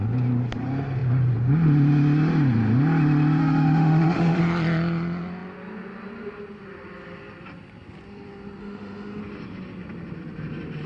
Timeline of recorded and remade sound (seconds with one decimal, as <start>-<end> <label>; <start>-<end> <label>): 0.0-3.4 recorded; 3.4-4.4 remade; 4.4-8.6 recorded; 8.6-9.2 remade; 9.2-10.9 recorded